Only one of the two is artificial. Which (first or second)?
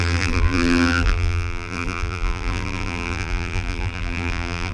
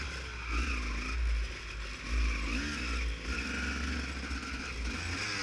first